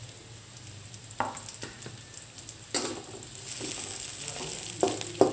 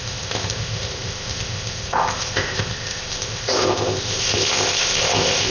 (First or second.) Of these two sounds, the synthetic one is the second